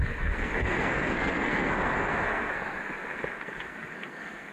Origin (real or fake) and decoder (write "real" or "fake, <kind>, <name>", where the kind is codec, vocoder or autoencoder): fake, codec, SNAC